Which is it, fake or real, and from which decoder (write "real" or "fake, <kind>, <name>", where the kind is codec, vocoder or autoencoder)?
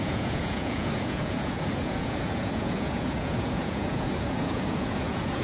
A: fake, vocoder, Vocos